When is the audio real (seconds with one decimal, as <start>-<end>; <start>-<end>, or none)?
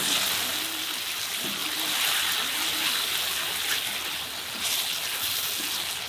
0.0-6.1